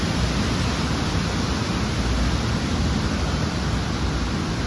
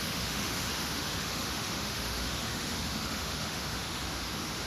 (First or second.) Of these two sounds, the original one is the first